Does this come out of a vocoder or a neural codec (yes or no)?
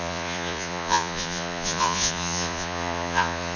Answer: yes